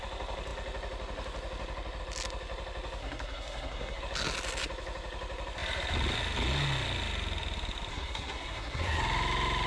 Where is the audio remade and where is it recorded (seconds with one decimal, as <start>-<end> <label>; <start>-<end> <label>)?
0.0-3.0 recorded; 3.0-4.0 remade; 4.0-7.9 recorded; 7.9-9.0 remade; 9.0-9.7 recorded